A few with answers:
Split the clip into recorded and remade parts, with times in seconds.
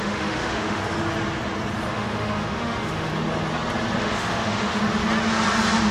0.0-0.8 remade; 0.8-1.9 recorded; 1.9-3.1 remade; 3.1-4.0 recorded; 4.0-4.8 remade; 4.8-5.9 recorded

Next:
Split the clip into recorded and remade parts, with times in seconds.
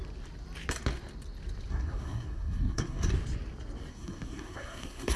0.0-1.7 recorded; 1.7-3.1 remade; 3.1-3.9 recorded; 3.9-5.2 remade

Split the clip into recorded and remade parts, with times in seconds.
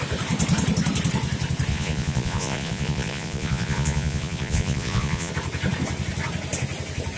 0.0-1.7 recorded; 1.7-5.3 remade; 5.3-7.2 recorded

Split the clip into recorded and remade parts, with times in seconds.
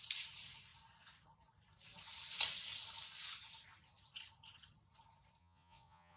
0.0-5.4 recorded; 5.4-6.2 remade